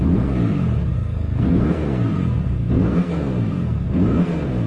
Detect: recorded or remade remade